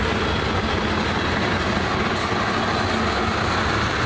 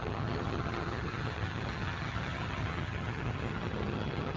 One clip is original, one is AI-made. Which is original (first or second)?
first